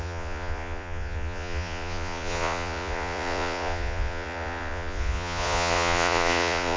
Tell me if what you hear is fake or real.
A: fake